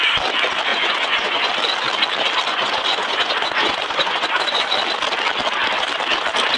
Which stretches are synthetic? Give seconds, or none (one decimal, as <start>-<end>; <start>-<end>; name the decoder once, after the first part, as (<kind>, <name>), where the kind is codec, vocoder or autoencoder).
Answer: 0.7-1.5 (vocoder, Vocos); 2.5-4.7